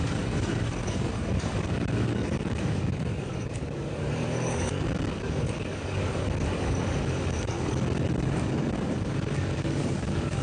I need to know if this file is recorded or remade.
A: remade